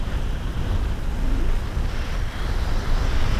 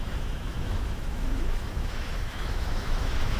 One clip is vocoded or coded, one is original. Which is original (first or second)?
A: first